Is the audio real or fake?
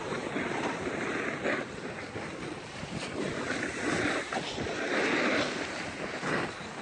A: real